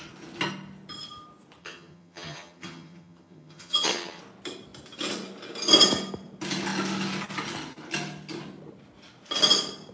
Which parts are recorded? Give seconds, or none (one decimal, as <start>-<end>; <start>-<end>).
0.0-1.6; 4.2-9.9